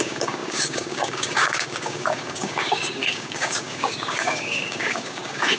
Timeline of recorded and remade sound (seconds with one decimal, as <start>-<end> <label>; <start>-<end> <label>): 0.0-5.6 remade